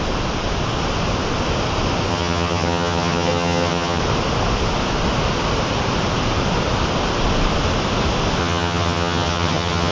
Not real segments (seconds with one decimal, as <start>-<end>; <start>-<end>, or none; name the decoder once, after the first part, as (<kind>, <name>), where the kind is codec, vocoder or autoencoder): 2.1-4.0 (vocoder, HiFi-GAN); 8.4-9.9